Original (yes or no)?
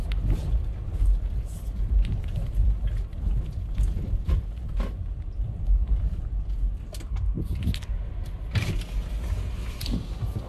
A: yes